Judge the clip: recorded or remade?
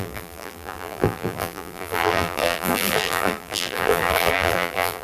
remade